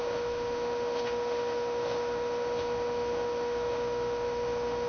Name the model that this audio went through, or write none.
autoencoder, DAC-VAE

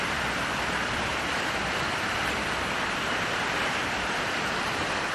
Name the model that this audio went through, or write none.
vocoder, BigVGAN v2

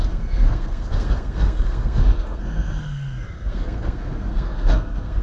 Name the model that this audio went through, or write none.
codec, SNAC